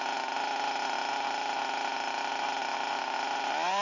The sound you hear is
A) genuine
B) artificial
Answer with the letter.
A